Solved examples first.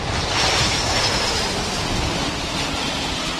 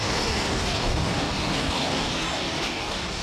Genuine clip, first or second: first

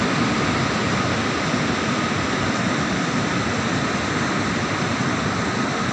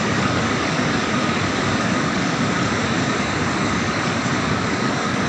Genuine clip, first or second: first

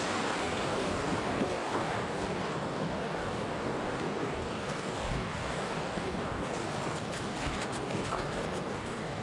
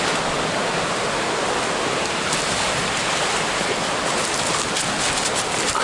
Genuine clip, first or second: second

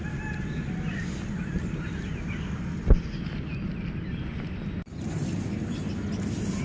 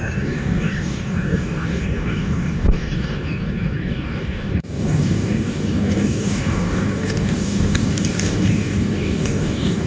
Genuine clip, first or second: first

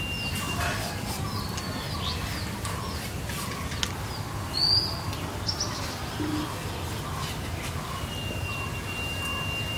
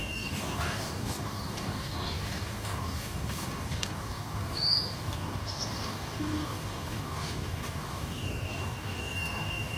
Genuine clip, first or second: first